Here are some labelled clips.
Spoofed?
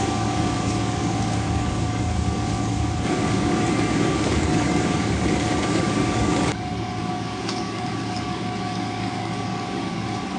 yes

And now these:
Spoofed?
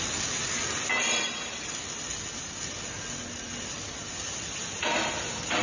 no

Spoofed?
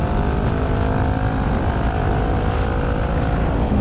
no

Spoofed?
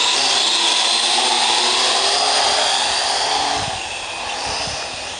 no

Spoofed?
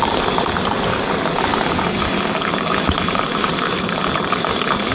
no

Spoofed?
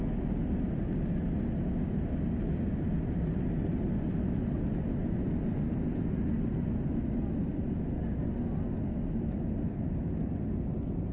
no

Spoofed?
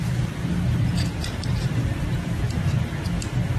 no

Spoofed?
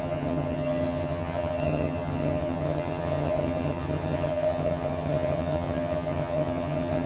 yes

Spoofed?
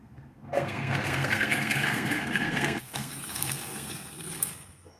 yes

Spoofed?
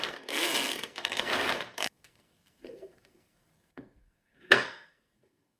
yes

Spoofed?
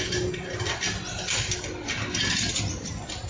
no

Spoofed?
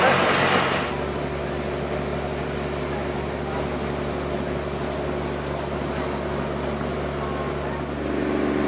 no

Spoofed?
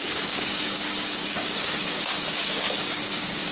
yes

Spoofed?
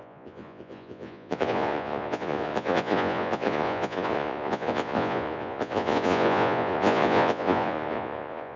yes